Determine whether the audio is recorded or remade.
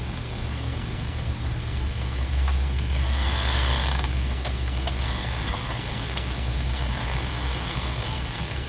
remade